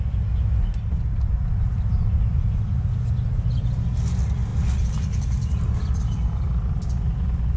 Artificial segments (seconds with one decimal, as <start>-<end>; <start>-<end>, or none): 4.5-6.8